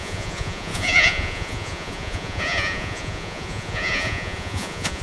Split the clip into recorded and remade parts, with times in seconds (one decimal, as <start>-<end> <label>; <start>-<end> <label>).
0.0-5.0 remade